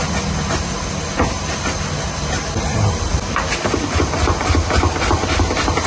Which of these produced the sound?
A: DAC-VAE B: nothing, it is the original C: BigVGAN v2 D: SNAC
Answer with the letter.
B